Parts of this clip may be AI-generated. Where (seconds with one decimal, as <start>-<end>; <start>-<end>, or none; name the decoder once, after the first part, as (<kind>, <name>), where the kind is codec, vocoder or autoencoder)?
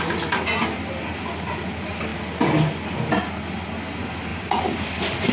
none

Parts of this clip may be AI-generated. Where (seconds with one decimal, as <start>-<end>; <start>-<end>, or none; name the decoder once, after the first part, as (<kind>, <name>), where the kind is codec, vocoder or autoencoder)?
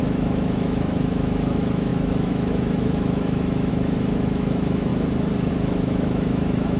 0.0-4.9 (autoencoder, DAC-VAE); 5.5-6.8